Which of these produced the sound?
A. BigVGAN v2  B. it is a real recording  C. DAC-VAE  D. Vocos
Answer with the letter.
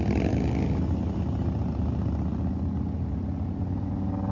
B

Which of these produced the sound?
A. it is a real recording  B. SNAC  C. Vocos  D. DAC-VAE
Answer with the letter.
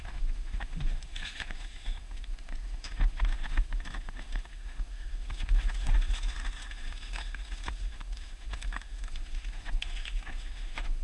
D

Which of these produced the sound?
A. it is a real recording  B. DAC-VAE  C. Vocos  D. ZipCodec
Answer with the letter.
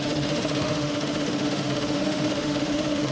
B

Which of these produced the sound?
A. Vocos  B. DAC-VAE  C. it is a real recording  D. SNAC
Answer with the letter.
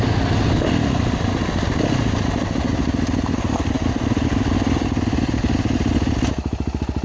C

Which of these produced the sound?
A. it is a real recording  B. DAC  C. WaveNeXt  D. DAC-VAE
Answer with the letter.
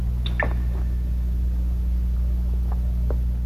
A